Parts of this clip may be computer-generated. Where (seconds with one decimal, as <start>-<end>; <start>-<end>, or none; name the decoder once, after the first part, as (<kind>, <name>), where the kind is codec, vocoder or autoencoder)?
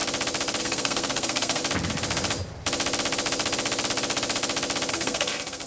0.6-1.6 (codec, SNAC); 4.9-5.7